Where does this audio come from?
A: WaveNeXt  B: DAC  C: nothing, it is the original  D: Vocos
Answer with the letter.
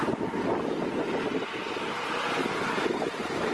C